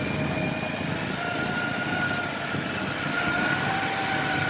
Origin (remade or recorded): recorded